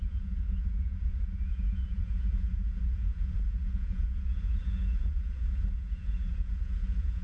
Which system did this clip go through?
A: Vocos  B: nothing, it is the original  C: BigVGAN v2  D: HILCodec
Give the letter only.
A